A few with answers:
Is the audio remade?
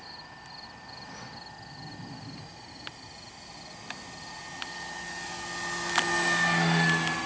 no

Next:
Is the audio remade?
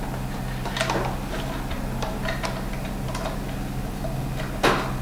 no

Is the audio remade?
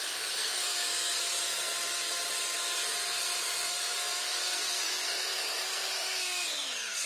yes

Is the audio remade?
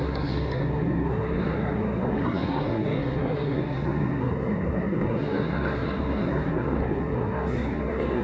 yes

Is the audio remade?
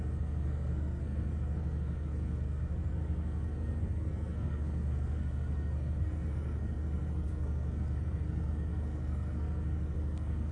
yes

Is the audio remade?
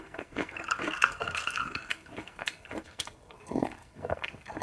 yes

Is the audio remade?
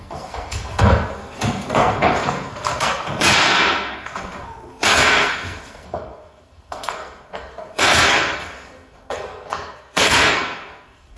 yes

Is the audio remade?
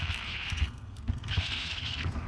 yes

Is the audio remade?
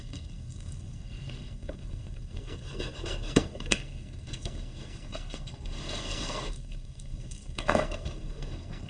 yes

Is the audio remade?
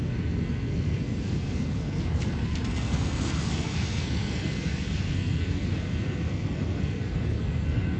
yes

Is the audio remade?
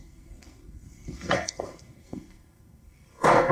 yes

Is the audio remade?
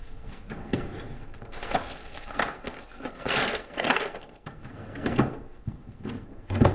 yes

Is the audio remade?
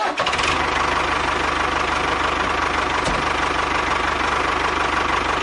no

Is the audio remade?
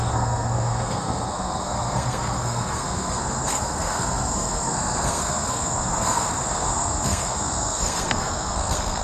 yes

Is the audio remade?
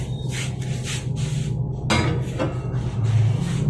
no